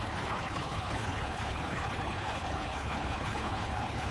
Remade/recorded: remade